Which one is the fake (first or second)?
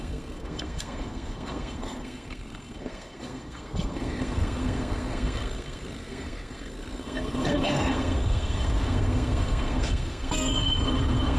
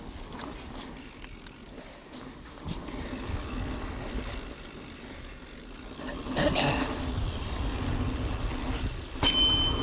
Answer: first